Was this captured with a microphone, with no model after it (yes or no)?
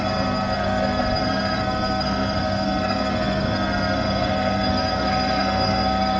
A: no